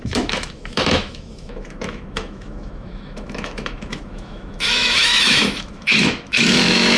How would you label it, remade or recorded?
remade